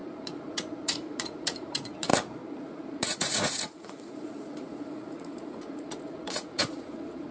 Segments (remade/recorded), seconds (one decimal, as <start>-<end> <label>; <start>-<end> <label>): 0.0-2.1 remade; 2.1-2.6 recorded; 2.6-7.3 remade